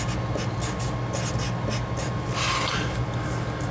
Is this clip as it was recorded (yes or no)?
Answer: yes